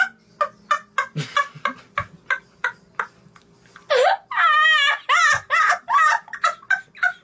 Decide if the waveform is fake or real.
real